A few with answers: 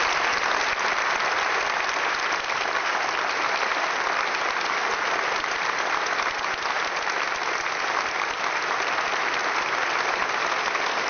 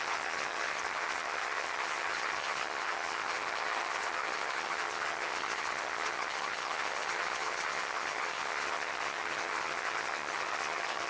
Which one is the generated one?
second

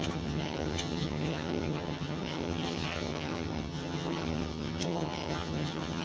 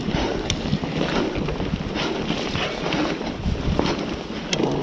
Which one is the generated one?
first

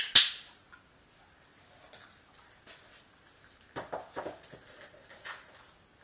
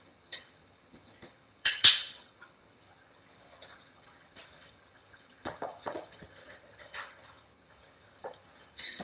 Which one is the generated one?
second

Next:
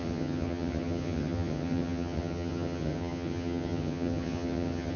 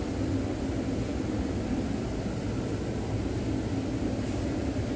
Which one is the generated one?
first